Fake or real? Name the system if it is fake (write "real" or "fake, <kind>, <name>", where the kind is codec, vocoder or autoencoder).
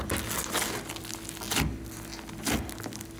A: real